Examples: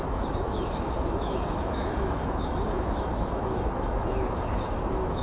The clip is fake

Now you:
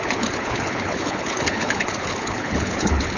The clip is fake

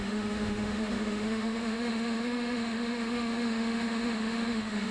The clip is fake